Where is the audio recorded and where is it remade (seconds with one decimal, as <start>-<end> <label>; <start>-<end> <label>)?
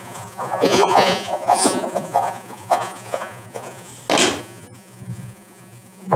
0.0-3.9 remade; 3.9-4.4 recorded; 4.4-6.2 remade